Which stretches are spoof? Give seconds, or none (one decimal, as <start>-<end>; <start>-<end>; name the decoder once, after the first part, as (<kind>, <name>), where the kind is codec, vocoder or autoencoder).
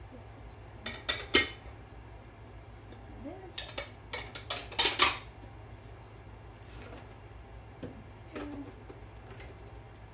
none